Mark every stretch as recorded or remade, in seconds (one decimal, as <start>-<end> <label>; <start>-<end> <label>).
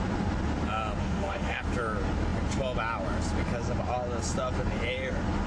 0.0-1.0 recorded; 1.0-1.6 remade; 1.6-5.5 recorded